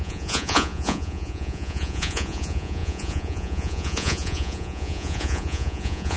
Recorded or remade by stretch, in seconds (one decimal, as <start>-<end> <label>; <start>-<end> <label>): 0.0-6.2 remade